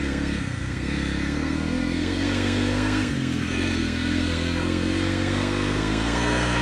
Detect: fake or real fake